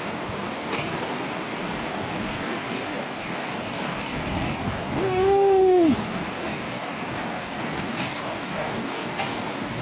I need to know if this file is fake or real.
fake